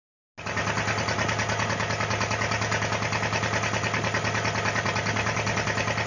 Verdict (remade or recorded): recorded